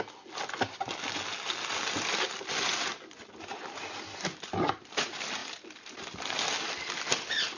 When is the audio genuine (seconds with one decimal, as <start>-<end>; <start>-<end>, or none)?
0.0-7.6